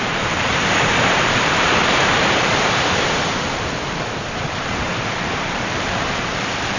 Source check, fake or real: fake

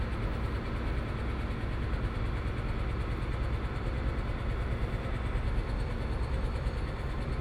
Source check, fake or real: real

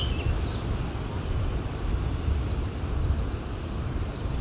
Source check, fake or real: real